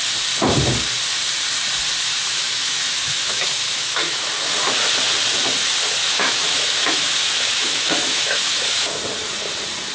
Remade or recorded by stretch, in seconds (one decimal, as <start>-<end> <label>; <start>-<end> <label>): 0.0-2.0 recorded; 2.0-4.3 remade; 4.3-6.0 recorded; 6.0-9.0 remade; 9.0-9.9 recorded